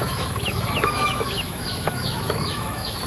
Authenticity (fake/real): fake